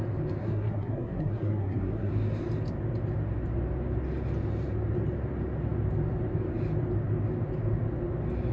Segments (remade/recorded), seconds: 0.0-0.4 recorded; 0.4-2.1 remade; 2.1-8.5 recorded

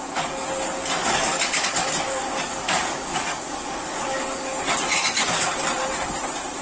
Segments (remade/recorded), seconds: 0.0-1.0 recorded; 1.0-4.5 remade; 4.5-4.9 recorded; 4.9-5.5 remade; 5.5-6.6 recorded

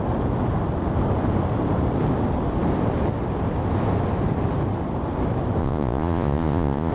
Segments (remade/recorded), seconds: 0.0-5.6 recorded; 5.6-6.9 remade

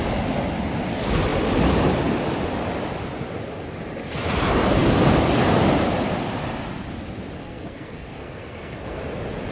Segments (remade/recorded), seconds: 0.0-7.4 recorded; 7.4-9.0 remade; 9.0-9.5 recorded